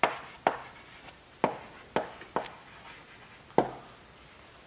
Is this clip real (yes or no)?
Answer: yes